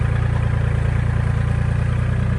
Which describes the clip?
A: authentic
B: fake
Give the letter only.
A